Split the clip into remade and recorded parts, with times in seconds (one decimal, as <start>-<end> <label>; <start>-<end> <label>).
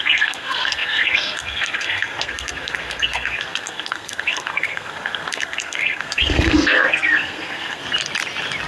0.0-7.8 remade; 7.8-8.7 recorded